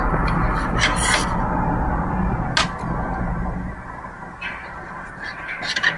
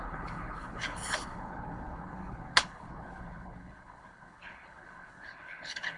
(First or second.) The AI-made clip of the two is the second